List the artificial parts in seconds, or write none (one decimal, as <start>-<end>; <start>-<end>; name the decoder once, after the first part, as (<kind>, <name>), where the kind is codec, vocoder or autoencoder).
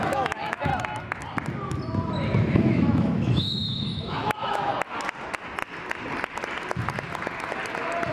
0.0-0.7 (autoencoder, DAC-VAE); 2.4-4.7